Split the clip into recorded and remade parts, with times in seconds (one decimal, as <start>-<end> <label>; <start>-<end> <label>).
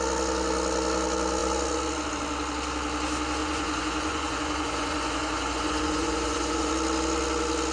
0.0-3.4 recorded; 3.4-6.7 remade; 6.7-7.7 recorded